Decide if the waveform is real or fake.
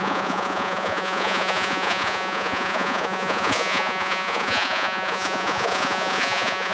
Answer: fake